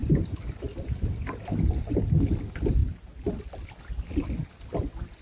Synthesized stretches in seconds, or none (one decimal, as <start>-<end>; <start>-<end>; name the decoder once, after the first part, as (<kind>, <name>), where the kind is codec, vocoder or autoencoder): none